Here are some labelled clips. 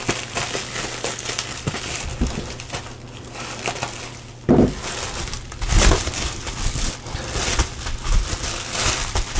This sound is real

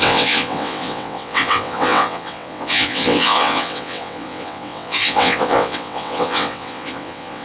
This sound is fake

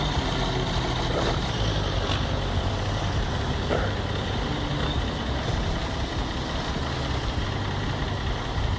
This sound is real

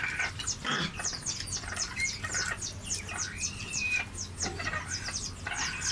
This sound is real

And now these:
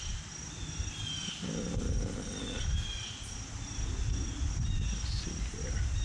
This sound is real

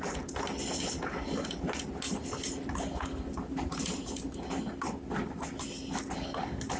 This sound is real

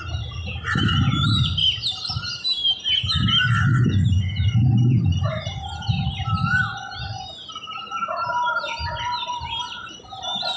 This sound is real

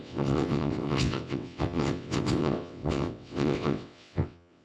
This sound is fake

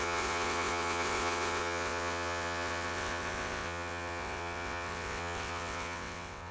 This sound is fake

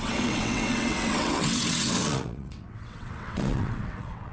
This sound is fake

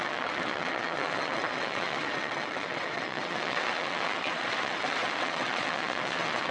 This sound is fake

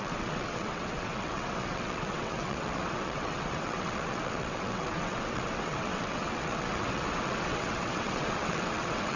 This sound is fake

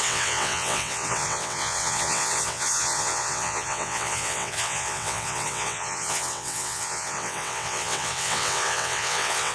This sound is fake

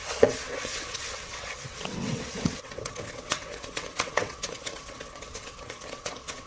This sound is fake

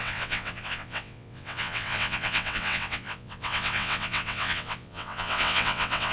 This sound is fake